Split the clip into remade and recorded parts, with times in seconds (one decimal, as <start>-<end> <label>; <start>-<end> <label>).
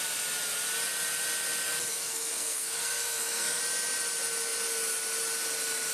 0.0-1.9 recorded; 1.9-3.6 remade; 3.6-5.9 recorded